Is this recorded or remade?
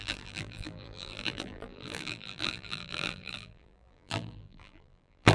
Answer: remade